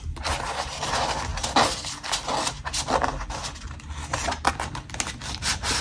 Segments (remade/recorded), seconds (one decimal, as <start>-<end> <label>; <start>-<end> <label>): 0.0-5.8 recorded